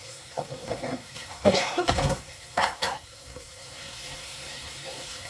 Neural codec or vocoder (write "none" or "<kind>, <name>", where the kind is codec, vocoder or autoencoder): codec, SNAC